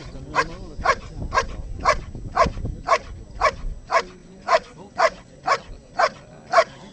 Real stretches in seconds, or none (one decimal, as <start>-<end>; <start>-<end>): 0.0-4.2; 5.4-6.9